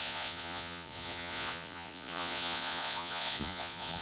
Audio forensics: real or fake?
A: fake